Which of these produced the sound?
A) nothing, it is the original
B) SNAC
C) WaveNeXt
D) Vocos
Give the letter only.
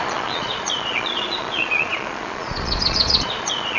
D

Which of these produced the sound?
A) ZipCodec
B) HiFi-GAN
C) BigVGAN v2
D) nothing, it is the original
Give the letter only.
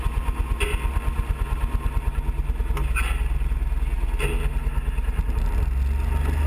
D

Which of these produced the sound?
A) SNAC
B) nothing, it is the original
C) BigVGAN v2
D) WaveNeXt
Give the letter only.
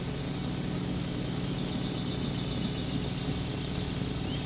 B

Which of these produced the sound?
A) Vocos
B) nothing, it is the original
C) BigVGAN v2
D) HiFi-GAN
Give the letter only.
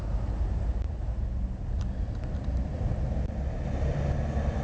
B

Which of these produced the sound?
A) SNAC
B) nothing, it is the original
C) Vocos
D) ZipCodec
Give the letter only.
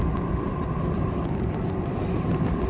B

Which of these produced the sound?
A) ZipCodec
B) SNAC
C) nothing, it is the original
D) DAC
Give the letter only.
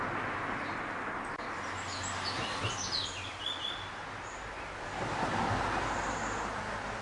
C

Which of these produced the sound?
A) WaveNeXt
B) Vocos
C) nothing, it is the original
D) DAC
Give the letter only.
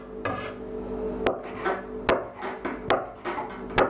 C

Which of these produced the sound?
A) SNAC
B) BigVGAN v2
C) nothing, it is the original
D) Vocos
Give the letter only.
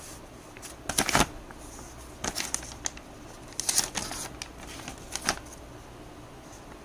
C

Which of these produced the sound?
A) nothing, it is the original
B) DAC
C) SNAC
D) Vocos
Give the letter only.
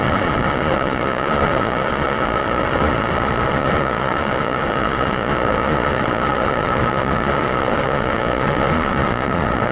D